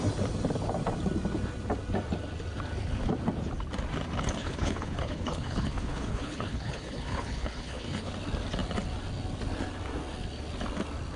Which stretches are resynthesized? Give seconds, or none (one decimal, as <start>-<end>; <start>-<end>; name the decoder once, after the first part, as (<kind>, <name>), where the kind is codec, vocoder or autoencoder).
4.4-8.1 (codec, HILCodec)